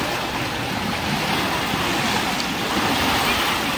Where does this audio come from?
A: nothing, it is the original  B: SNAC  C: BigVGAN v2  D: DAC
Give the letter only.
A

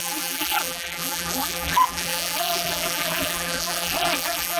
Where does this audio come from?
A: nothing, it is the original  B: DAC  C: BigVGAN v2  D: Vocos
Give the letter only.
C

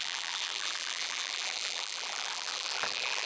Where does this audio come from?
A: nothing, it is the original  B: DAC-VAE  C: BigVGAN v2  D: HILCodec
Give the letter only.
C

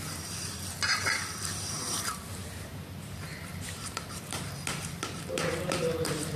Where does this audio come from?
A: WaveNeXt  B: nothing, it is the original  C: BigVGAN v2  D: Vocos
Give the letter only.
C